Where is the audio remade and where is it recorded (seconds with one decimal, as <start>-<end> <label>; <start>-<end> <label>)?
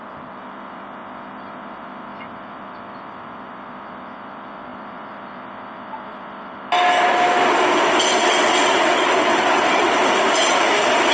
0.0-8.2 recorded; 8.2-9.9 remade; 9.9-11.1 recorded